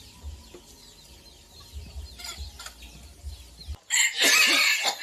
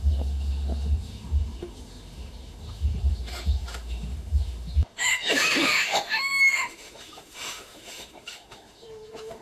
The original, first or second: first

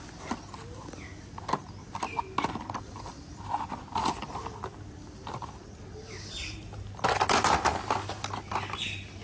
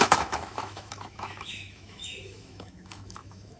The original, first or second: first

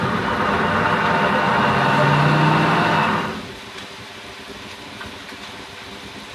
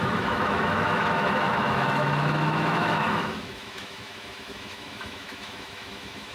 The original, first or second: first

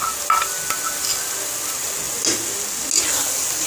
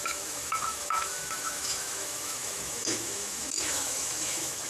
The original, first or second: first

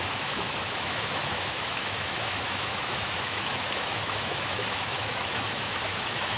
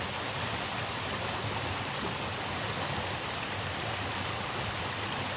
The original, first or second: second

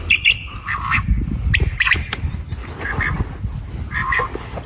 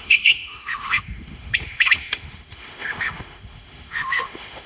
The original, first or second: first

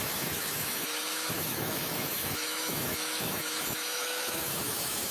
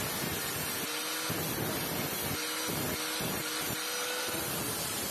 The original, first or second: second